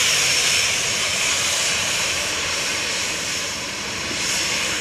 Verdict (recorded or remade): remade